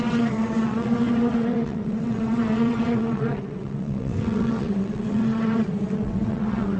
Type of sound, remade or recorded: remade